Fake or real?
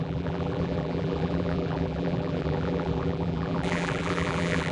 fake